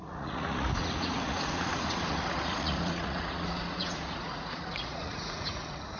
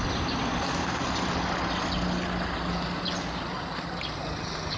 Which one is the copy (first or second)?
first